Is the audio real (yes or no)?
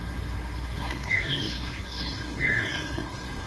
no